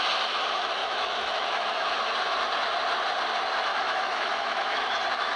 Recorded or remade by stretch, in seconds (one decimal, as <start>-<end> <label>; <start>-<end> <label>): 0.0-0.8 recorded; 0.8-1.9 remade; 1.9-3.7 recorded; 3.7-5.0 remade; 5.0-5.4 recorded